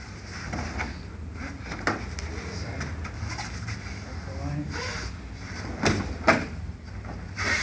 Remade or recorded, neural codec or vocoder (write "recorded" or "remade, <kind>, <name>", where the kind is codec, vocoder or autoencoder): recorded